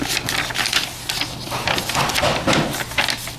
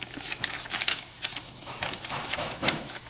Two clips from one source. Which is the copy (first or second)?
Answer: second